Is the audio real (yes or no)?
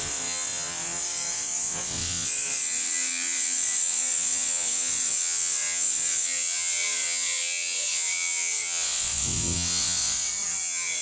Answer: no